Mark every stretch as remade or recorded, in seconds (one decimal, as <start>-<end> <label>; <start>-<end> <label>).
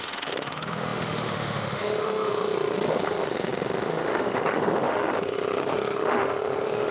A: 0.0-6.9 remade